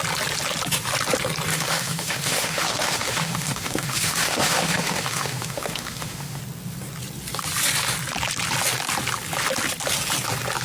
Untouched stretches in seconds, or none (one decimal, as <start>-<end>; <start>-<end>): 0.0-1.5; 6.4-10.6

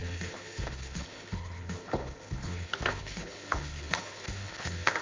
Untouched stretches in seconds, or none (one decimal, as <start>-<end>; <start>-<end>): none

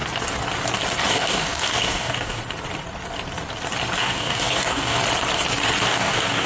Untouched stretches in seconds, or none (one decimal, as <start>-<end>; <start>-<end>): 0.0-1.1; 2.4-4.0; 5.0-5.8